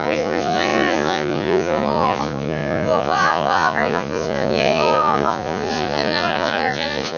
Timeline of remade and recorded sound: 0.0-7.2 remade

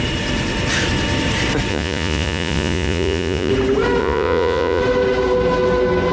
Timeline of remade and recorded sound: 0.0-1.7 recorded; 1.7-3.5 remade; 3.5-4.0 recorded; 4.0-4.8 remade; 4.8-6.1 recorded

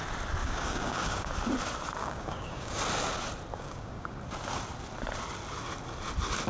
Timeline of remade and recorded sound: 0.0-0.4 recorded; 0.4-1.3 remade; 1.3-2.0 recorded; 2.0-2.8 remade; 2.8-3.5 recorded; 3.5-4.2 remade; 4.2-6.5 recorded

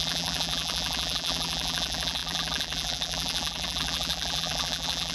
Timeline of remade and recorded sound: 0.0-5.1 remade

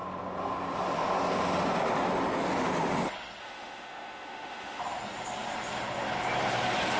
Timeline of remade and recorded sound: 0.0-3.4 recorded; 3.4-4.8 remade; 4.8-7.0 recorded

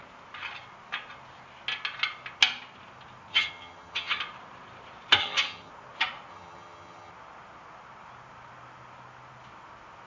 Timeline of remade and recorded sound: 0.0-3.3 recorded; 3.3-4.2 remade; 4.2-5.2 recorded; 5.2-5.7 remade; 5.7-6.3 recorded; 6.3-7.1 remade; 7.1-10.1 recorded

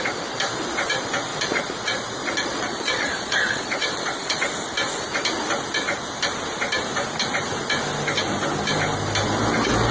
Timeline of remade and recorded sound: 0.0-1.3 recorded; 1.3-1.8 remade; 1.8-2.2 recorded; 2.2-4.4 remade; 4.4-9.9 recorded